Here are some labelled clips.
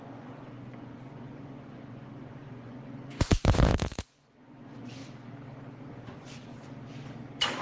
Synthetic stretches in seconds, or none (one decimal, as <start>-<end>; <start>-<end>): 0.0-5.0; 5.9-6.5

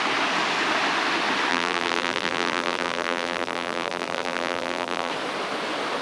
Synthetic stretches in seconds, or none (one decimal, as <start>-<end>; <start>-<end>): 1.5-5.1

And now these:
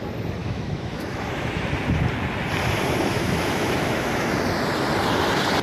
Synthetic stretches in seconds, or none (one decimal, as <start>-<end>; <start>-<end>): 0.4-1.6; 3.1-4.4

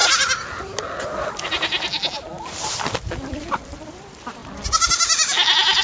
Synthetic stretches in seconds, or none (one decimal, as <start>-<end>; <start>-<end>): 3.0-4.4

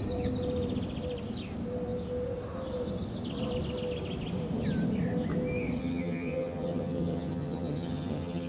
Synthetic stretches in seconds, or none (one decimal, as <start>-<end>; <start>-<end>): 5.8-8.5